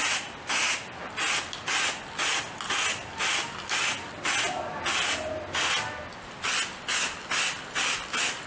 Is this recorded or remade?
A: recorded